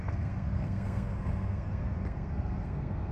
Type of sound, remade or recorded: remade